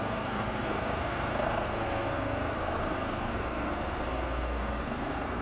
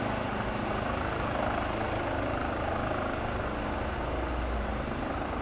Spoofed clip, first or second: first